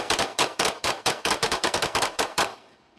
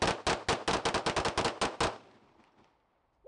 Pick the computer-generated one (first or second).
first